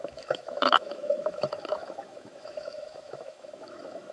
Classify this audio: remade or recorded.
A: remade